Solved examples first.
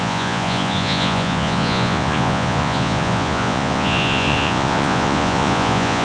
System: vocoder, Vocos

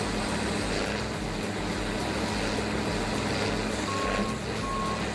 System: none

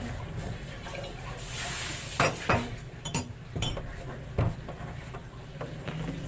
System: none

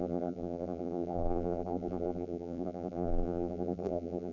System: vocoder, BigVGAN v2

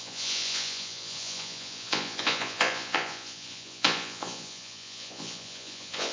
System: vocoder, Vocos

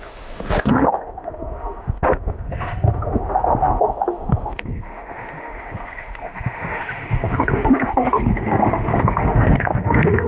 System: autoencoder, DAC-VAE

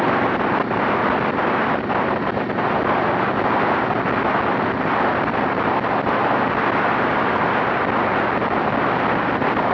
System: none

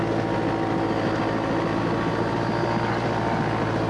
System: none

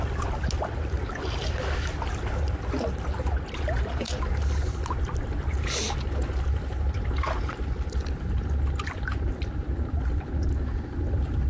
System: none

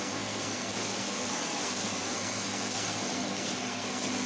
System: codec, SNAC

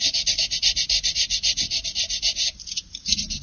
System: none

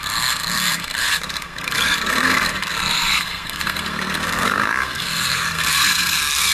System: codec, SNAC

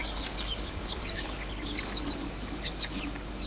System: codec, DAC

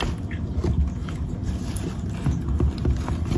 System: none